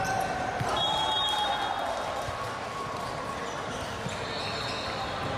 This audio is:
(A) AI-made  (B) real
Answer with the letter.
B